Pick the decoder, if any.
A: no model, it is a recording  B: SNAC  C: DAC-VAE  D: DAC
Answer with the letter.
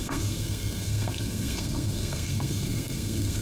B